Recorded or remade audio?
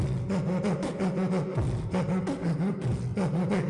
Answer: recorded